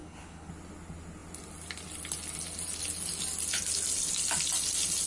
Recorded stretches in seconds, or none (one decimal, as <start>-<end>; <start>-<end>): 0.5-5.1